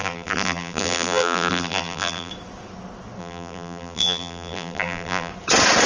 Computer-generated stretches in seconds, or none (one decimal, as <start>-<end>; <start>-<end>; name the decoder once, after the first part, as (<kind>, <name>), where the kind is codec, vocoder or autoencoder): 0.0-2.3 (vocoder, BigVGAN v2); 3.2-5.3